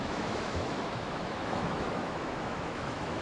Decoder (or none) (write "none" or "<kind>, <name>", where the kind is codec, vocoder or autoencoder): autoencoder, DAC-VAE